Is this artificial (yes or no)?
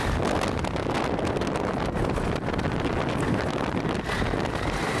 no